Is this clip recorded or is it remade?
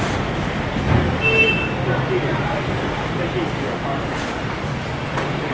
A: recorded